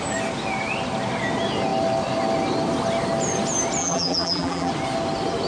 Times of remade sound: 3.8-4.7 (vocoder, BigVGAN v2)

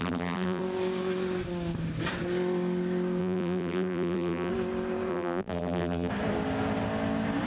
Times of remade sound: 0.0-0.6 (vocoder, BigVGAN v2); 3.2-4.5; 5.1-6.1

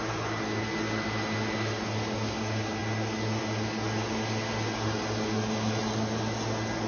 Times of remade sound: none

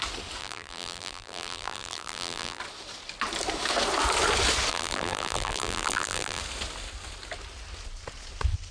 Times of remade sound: 0.4-2.6 (vocoder, BigVGAN v2); 4.7-6.4

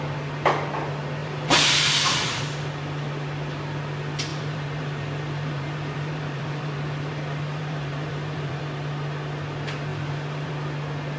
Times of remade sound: 1.2-2.4 (vocoder, BigVGAN v2); 4.3-8.6; 9.9-10.5

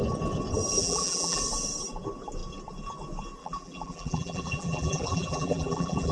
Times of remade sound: 0.8-1.4 (vocoder, BigVGAN v2); 3.4-6.1

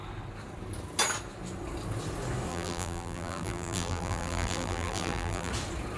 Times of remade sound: 2.5-5.5 (vocoder, BigVGAN v2)

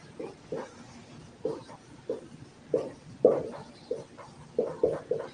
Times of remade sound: none